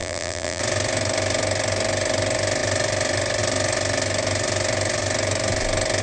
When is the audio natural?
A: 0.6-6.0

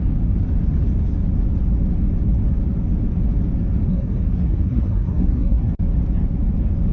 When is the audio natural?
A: 0.0-3.9; 5.7-6.9

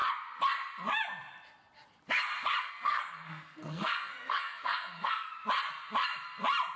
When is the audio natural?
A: 0.0-2.6; 5.3-6.8

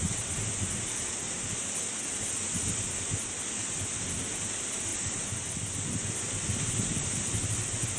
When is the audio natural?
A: 0.0-8.0

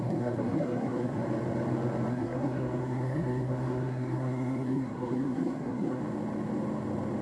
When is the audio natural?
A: 1.2-2.1; 6.0-7.2

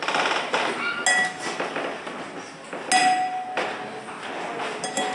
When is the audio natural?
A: 0.0-5.1

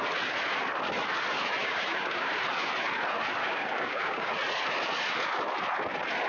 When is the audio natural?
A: 0.0-1.6; 2.3-3.4; 4.3-6.3